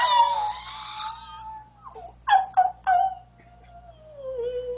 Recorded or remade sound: recorded